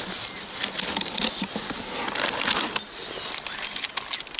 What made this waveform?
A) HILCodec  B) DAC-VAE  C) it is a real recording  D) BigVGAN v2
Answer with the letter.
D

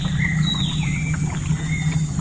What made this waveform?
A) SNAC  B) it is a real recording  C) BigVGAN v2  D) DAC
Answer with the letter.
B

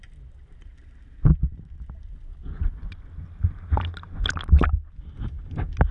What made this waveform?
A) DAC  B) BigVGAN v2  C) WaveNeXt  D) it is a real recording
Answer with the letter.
D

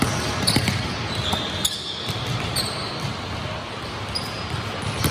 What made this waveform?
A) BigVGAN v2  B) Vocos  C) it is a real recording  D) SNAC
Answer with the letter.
C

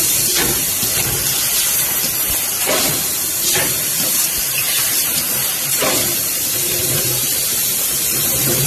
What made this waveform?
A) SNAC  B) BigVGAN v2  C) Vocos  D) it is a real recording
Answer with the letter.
B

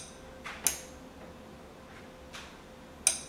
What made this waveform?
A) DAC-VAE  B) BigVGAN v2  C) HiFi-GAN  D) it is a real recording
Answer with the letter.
D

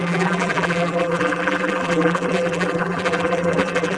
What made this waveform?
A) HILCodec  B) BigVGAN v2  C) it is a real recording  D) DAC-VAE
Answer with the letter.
B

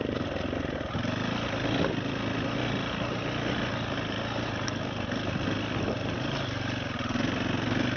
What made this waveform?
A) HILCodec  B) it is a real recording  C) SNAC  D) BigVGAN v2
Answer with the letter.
B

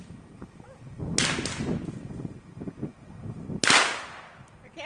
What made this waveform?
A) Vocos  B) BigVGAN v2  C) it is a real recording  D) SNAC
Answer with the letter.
C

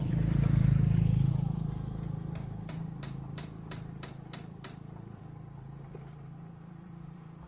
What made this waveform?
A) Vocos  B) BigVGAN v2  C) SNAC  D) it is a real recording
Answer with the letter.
B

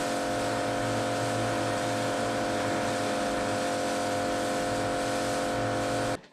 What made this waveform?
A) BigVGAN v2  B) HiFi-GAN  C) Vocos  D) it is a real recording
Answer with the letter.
D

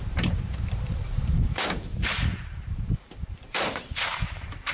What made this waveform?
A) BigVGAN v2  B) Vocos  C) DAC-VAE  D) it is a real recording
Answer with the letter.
A